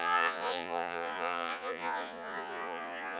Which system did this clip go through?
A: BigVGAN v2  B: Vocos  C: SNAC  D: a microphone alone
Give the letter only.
B